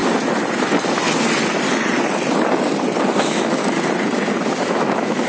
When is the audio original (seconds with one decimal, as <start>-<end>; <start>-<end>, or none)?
0.0-3.2; 3.6-4.6